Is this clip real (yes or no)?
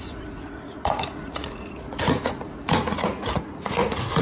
no